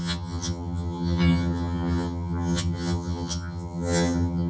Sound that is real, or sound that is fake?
fake